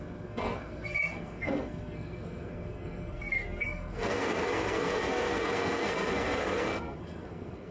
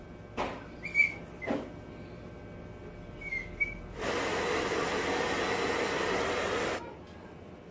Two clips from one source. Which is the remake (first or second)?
first